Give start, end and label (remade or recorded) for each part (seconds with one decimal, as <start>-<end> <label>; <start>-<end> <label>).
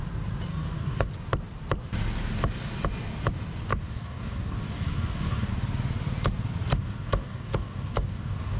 0.0-0.5 recorded; 0.5-1.1 remade; 1.1-3.7 recorded; 3.7-5.5 remade; 5.5-6.7 recorded; 6.7-8.6 remade